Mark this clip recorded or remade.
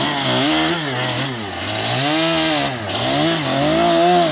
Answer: recorded